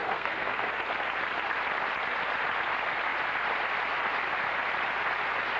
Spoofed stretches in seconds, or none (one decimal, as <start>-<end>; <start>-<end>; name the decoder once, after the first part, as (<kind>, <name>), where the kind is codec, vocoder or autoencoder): 0.0-0.7 (codec, SNAC)